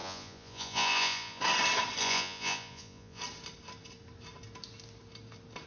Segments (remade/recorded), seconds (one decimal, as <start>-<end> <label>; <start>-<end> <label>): 0.0-1.4 remade; 1.4-2.0 recorded; 2.0-3.2 remade; 3.2-5.7 recorded